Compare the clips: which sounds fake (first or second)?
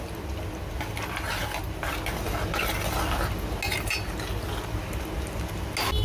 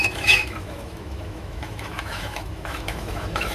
second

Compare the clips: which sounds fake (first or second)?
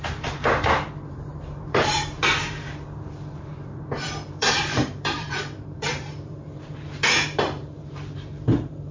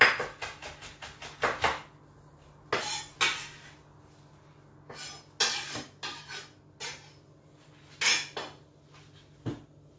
first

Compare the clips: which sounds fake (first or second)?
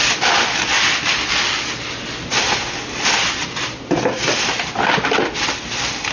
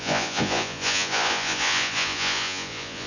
second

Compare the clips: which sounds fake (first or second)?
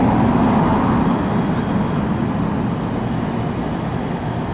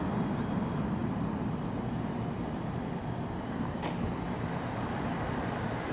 second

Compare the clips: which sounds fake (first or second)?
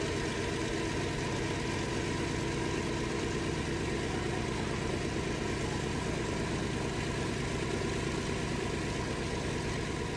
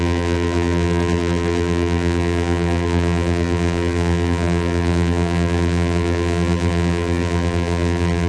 second